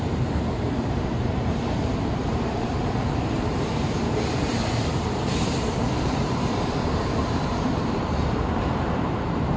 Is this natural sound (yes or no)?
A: no